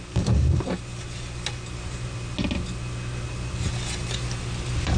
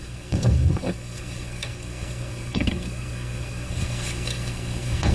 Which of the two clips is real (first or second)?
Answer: first